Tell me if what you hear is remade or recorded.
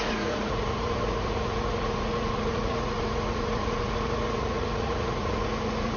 remade